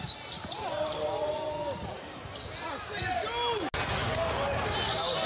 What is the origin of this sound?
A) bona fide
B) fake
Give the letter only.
A